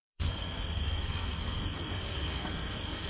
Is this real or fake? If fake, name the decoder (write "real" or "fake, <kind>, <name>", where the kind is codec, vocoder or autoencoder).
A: fake, codec, SNAC